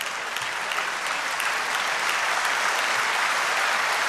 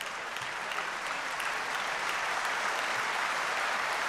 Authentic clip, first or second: first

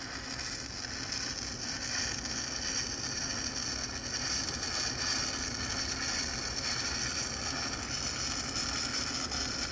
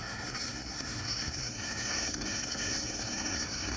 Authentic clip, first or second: first